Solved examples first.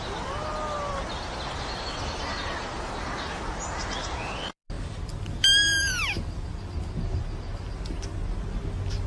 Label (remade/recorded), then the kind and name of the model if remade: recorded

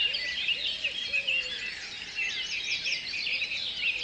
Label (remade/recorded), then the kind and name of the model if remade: remade, vocoder, BigVGAN v2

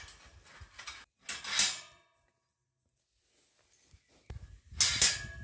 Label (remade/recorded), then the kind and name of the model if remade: recorded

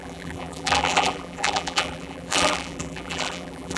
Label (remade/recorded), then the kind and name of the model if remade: remade, vocoder, BigVGAN v2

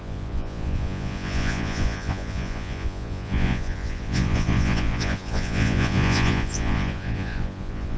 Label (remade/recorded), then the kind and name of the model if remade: remade, vocoder, Vocos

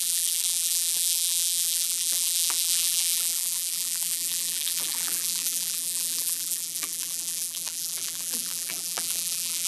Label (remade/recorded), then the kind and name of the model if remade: remade, vocoder, BigVGAN v2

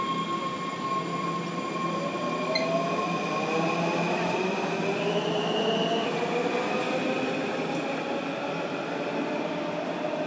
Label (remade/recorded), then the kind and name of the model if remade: recorded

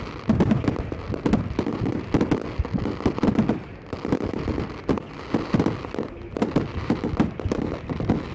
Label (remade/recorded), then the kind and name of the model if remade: recorded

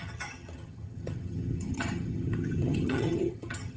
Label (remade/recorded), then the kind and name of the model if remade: remade, vocoder, HiFi-GAN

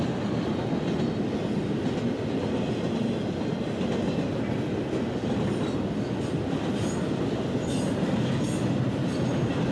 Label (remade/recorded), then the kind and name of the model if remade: recorded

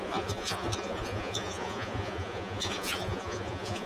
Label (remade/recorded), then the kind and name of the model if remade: remade, vocoder, Vocos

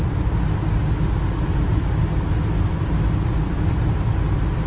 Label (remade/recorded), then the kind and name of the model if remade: recorded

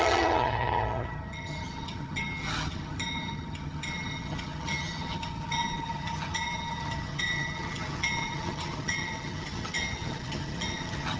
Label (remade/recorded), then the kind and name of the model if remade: remade, vocoder, HiFi-GAN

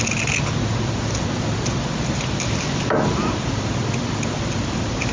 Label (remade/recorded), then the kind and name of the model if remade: recorded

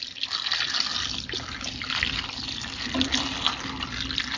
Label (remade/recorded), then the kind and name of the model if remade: recorded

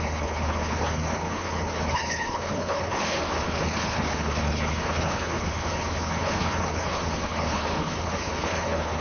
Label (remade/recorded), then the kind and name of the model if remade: remade, codec, HILCodec